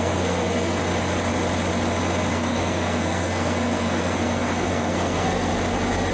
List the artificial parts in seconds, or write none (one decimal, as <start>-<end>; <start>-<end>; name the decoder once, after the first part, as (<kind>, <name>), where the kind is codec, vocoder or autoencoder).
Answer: 0.0-0.8 (codec, SNAC); 2.3-5.5